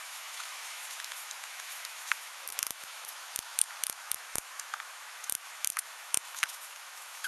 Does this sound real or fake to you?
fake